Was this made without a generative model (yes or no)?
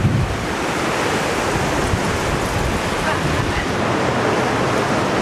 yes